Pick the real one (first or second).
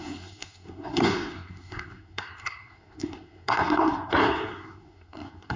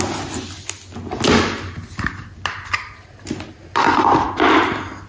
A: second